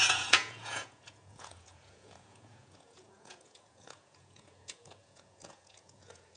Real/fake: fake